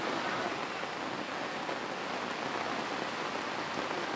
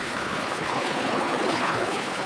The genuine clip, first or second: first